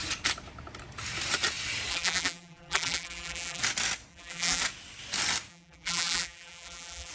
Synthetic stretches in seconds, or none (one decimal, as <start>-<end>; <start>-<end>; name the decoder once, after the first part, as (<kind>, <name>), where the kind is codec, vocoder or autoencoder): 1.9-3.6 (vocoder, BigVGAN v2); 4.1-4.6; 5.5-7.1

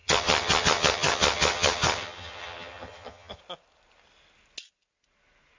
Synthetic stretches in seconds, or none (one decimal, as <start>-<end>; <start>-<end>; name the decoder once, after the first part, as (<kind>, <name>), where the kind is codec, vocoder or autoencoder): 0.0-3.4 (vocoder, HiFi-GAN)

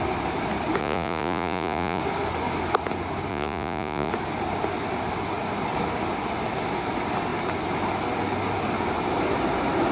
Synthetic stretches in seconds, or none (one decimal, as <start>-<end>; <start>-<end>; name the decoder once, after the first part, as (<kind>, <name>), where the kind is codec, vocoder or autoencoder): 0.8-2.0 (vocoder, Vocos); 3.3-4.1

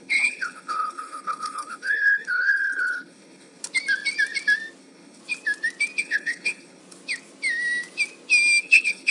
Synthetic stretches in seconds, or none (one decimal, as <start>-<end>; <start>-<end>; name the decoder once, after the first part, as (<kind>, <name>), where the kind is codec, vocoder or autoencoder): 0.0-3.6 (codec, HILCodec); 4.8-5.2; 6.0-6.8; 8.6-9.1

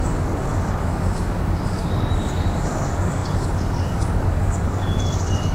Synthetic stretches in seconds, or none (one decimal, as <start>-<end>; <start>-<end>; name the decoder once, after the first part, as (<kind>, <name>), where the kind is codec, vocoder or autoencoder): 0.0-5.5 (codec, DAC)

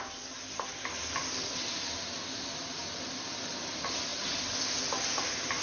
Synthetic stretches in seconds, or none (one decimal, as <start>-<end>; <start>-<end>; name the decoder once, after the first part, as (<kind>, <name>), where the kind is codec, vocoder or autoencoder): none

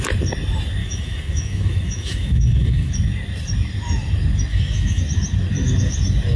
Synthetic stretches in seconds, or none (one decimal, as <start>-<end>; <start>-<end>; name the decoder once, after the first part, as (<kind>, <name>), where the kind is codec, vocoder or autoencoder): 0.8-2.9 (autoencoder, DAC-VAE); 4.5-5.0